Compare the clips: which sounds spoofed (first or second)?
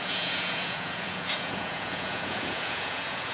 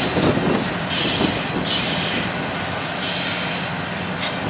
first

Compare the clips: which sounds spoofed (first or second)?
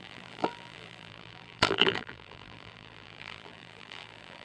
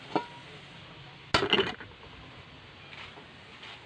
first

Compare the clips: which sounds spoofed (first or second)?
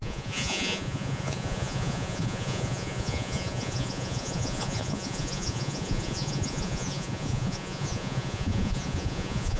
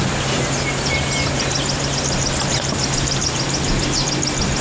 first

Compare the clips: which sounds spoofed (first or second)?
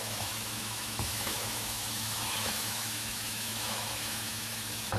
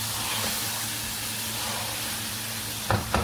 first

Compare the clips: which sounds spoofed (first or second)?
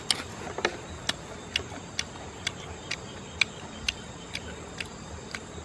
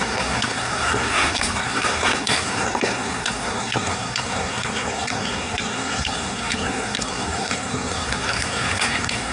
second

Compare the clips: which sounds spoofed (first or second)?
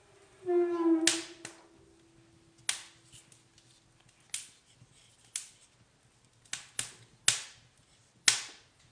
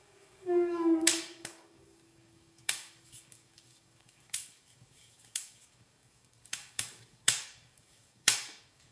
second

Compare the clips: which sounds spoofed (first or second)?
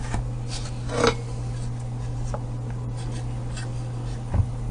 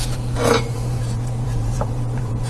second